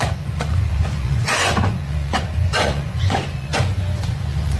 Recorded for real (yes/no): no